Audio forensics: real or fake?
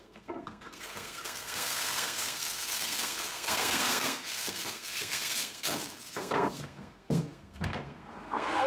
fake